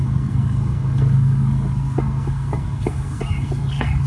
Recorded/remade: remade